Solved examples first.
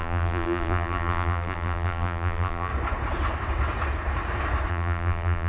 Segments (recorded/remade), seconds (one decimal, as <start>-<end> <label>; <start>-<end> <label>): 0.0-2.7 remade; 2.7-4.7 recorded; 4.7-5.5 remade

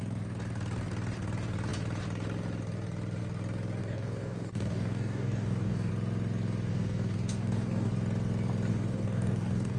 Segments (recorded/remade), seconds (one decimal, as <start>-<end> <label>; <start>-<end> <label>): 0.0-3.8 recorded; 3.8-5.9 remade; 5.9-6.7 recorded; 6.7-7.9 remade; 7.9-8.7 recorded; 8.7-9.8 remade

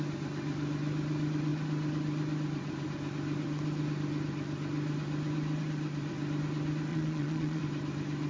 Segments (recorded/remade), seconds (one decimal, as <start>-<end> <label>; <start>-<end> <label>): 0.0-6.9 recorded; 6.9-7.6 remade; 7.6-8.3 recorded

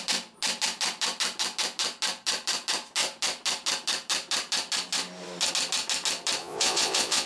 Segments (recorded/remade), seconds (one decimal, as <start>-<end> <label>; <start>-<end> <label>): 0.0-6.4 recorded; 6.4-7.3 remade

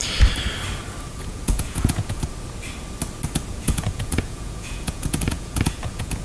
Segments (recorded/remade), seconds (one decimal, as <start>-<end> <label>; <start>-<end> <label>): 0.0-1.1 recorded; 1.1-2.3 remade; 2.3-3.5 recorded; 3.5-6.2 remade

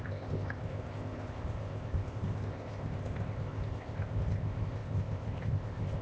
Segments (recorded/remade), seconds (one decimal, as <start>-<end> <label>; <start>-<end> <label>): 0.0-6.0 remade